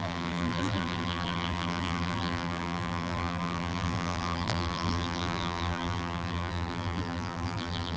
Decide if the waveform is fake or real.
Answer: fake